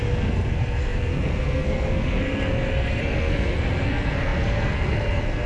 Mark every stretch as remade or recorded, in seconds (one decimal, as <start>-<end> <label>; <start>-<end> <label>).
0.0-5.5 remade